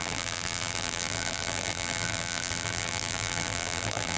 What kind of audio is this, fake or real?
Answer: fake